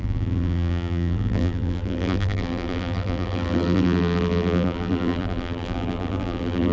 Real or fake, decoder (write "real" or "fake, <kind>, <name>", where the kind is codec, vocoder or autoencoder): fake, vocoder, BigVGAN v2